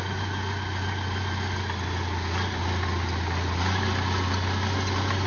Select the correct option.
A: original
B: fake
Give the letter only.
A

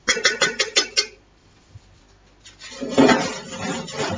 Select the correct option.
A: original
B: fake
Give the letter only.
A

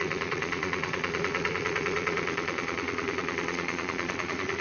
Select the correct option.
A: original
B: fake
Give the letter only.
B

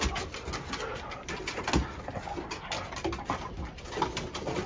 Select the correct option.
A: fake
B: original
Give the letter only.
B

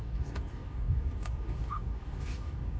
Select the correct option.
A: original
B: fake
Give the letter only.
B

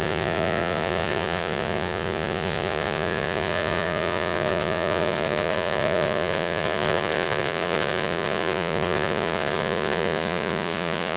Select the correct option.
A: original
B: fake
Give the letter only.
B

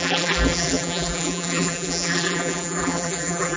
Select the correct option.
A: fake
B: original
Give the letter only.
A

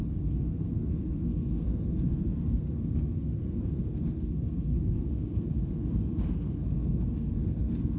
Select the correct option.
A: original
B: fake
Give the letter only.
B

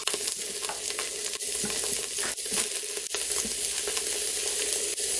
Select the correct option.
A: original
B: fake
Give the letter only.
A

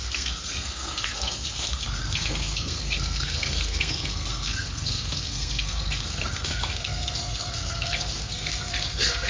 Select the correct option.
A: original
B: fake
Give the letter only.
B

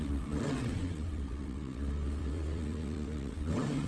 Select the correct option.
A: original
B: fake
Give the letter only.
B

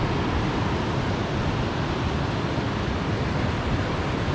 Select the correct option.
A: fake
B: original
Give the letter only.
B